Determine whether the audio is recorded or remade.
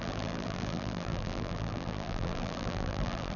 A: remade